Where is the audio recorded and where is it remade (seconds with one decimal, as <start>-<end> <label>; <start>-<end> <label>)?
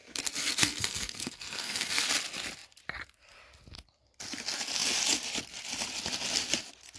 0.0-2.1 remade; 2.1-7.0 recorded